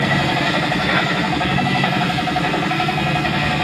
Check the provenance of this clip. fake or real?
fake